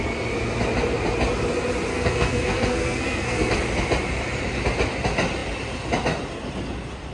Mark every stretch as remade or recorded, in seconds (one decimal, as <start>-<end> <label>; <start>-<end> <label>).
0.0-1.9 recorded; 1.9-3.5 remade; 3.5-7.1 recorded